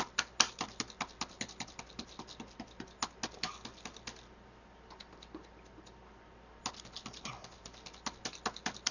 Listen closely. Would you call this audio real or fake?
real